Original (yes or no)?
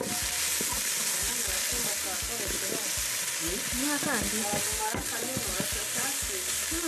yes